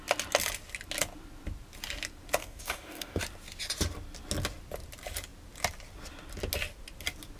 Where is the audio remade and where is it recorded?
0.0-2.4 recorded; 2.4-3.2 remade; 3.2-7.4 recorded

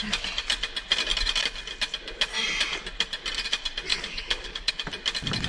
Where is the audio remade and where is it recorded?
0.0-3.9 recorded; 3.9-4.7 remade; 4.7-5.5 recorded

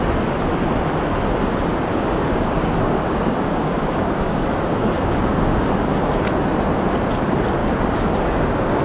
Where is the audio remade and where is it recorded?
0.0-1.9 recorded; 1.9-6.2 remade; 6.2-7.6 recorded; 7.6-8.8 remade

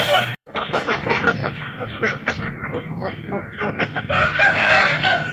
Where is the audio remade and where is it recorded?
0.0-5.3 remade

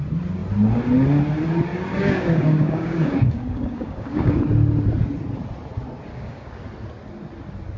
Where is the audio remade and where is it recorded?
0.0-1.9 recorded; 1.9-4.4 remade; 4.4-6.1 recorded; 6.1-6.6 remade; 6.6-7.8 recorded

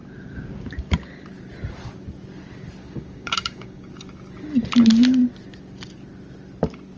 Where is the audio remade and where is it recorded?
0.0-2.8 recorded; 2.8-3.9 remade; 3.9-7.0 recorded